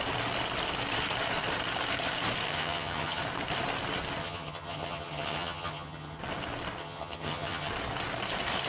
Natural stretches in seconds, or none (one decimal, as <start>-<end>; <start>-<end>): 0.0-2.5; 3.2-4.2; 6.2-6.8; 7.7-8.7